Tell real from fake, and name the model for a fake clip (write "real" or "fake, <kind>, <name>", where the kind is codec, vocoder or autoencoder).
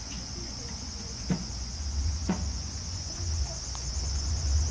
fake, vocoder, Vocos